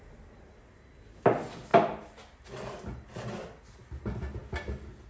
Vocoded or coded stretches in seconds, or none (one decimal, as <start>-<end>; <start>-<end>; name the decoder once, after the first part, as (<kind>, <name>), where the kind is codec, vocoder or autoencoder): none